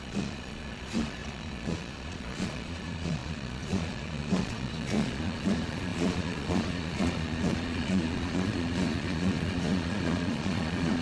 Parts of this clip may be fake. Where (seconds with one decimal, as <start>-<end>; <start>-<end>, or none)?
0.0-11.0